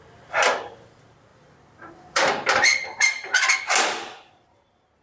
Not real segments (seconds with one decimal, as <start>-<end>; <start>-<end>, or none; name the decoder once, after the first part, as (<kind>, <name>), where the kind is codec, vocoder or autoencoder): 1.3-3.4 (vocoder, BigVGAN v2)